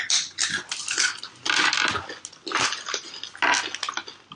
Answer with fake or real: real